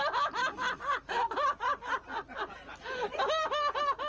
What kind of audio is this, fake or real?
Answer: real